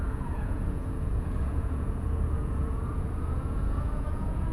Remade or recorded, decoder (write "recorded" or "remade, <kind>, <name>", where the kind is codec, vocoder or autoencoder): remade, vocoder, Vocos